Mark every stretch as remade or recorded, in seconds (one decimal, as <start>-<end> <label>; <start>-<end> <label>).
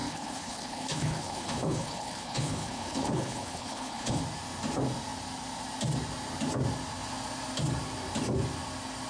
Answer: 0.0-4.2 remade; 4.2-9.1 recorded